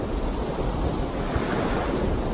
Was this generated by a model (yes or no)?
no